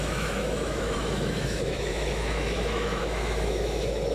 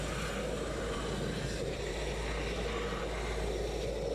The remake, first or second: first